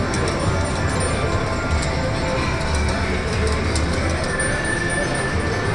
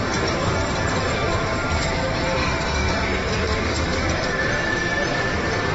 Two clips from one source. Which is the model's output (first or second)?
second